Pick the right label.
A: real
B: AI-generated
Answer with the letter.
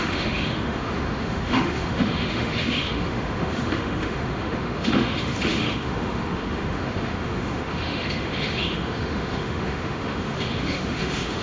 B